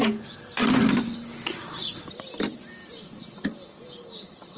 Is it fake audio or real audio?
real